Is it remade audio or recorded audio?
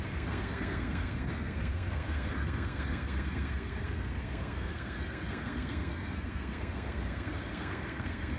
remade